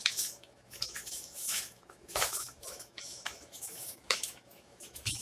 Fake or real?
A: fake